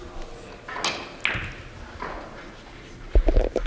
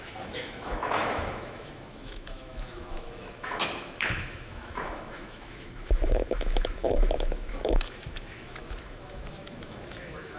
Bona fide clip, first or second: first